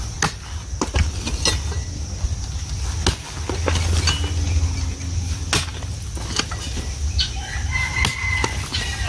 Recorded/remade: recorded